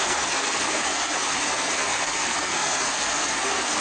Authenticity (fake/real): fake